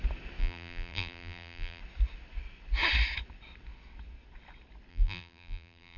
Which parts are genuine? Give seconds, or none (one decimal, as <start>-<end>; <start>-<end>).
0.0-0.4; 1.8-4.9

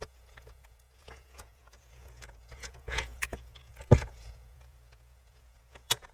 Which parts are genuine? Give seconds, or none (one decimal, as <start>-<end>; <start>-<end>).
none

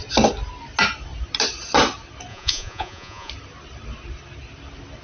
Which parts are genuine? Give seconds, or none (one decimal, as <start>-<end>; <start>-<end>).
0.0-2.3; 3.3-5.0

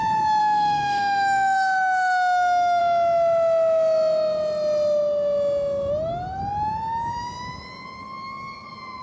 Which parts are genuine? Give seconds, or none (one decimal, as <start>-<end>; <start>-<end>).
0.0-0.4; 2.8-9.0

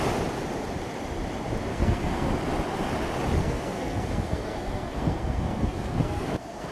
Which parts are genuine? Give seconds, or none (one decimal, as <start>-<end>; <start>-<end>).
0.0-1.7; 2.3-3.4